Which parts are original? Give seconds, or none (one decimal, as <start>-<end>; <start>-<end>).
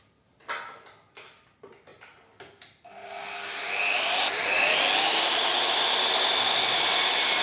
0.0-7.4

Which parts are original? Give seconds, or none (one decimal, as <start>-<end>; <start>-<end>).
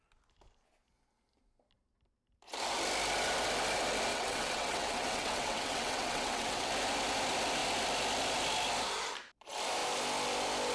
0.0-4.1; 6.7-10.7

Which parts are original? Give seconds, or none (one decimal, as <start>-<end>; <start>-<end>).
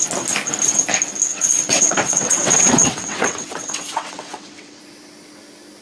0.0-1.3; 4.8-5.8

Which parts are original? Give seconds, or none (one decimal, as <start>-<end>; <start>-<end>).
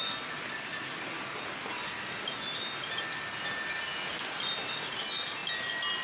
0.0-6.0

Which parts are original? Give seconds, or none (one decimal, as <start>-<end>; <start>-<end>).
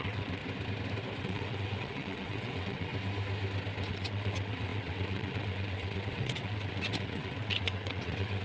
0.4-1.2; 2.9-3.9